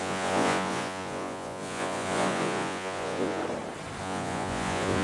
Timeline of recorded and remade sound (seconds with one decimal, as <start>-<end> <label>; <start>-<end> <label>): 0.0-3.4 remade; 3.4-4.0 recorded; 4.0-5.0 remade